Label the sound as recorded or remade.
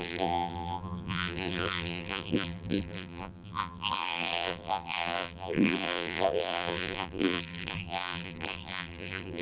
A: remade